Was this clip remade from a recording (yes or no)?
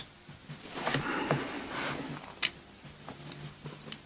no